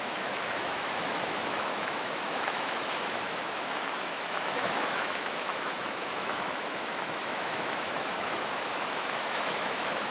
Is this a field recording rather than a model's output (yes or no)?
no